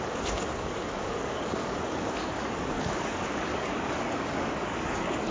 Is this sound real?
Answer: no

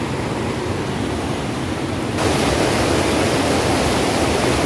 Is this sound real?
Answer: yes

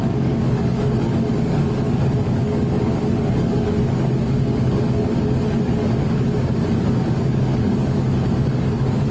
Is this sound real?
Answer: no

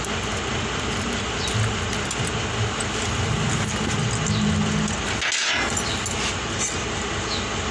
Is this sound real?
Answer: yes